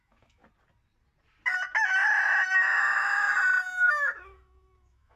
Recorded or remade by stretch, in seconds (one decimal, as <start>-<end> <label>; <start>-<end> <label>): 0.0-0.4 remade; 0.4-2.8 recorded; 2.8-3.3 remade; 3.3-3.9 recorded; 3.9-5.2 remade